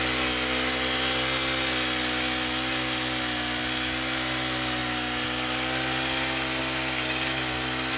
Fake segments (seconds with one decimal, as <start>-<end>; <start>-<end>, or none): none